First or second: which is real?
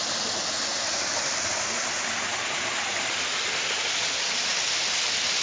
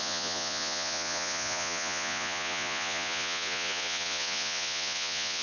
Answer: first